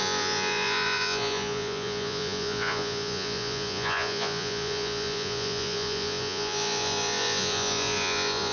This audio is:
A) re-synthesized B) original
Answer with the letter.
A